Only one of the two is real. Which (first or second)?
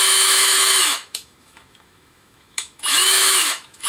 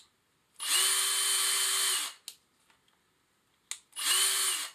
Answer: second